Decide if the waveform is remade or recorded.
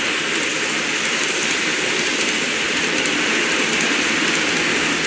recorded